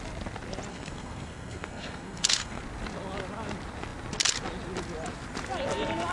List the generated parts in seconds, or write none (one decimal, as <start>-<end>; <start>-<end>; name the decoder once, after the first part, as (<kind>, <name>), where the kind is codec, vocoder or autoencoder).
0.7-2.6 (codec, SNAC)